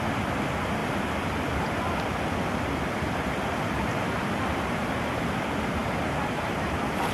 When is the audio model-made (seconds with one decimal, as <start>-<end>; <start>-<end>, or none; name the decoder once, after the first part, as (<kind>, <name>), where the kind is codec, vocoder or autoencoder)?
0.8-1.6 (vocoder, BigVGAN v2); 5.8-7.1